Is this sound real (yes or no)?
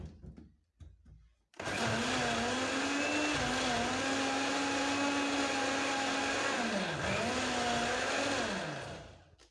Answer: yes